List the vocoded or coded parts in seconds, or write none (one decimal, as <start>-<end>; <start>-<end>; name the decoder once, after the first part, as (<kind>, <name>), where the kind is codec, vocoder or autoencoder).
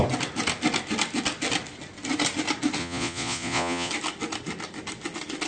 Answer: 2.8-3.9 (vocoder, Vocos)